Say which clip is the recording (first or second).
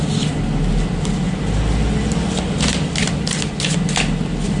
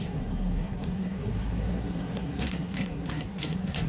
first